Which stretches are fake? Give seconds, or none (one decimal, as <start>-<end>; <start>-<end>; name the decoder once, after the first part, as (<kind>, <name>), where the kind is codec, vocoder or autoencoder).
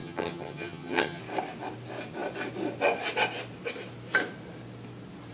0.0-1.2 (vocoder, HiFi-GAN)